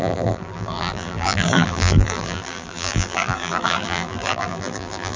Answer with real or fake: fake